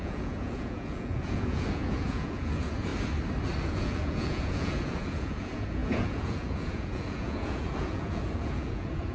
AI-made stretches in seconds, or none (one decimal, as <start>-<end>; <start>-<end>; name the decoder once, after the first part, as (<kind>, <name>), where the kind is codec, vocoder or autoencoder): 0.0-2.9 (vocoder, Vocos); 3.6-9.1